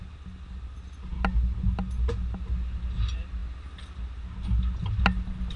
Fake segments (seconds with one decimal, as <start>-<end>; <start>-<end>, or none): none